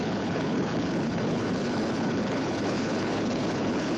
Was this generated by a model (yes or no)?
yes